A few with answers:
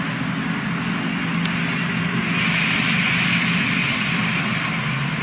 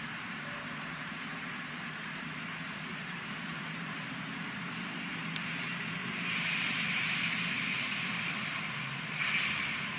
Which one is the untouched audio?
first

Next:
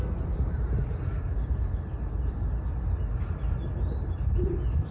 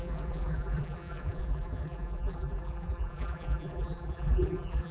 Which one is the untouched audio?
first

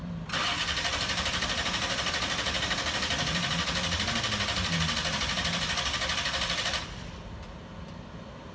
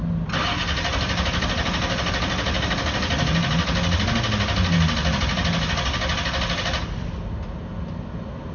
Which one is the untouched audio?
second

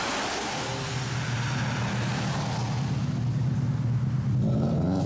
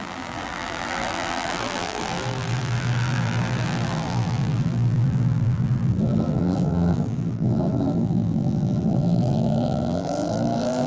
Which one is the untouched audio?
first